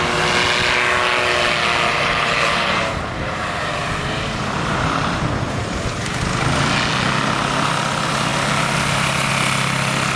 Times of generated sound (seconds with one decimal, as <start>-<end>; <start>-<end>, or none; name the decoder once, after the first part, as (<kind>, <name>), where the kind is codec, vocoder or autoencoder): 1.9-6.2 (vocoder, BigVGAN v2)